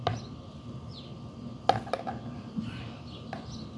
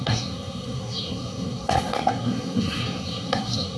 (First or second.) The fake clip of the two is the second